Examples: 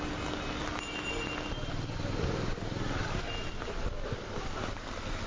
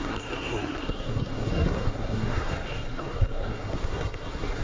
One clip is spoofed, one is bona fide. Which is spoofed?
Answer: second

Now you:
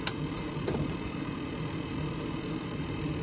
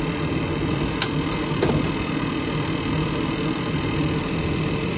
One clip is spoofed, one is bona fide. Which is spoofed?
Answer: first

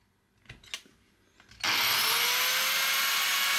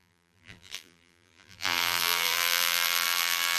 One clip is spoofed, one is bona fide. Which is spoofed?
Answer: second